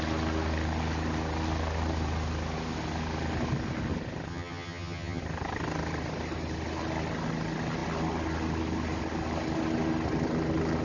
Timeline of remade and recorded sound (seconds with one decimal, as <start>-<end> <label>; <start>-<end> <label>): 0.0-4.3 recorded; 4.3-5.2 remade; 5.2-10.8 recorded